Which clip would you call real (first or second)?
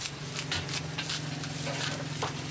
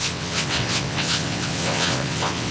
first